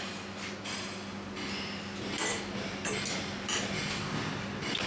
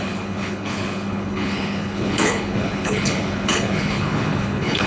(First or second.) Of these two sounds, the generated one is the second